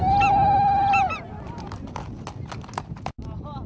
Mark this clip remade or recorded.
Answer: recorded